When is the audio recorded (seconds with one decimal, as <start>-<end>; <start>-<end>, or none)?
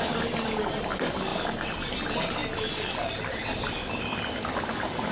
0.0-5.1